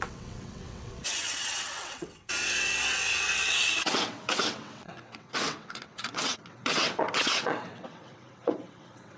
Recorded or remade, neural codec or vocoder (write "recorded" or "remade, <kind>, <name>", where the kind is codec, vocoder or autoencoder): remade, vocoder, WaveNeXt